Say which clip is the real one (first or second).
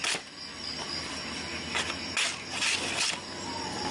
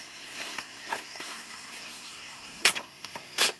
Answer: first